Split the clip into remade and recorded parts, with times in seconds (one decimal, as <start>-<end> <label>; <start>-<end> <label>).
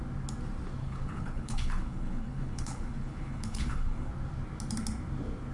0.0-0.8 recorded; 0.8-4.1 remade; 4.1-5.5 recorded